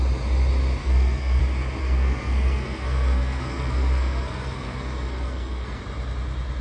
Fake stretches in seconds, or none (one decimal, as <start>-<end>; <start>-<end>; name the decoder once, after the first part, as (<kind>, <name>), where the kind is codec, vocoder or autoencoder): 0.8-1.4 (codec, SNAC); 1.8-5.8